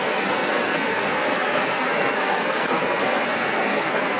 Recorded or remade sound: remade